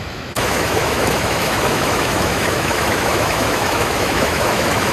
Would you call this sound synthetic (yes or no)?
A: yes